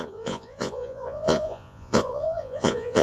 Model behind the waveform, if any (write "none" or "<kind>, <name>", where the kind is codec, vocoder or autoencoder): vocoder, Vocos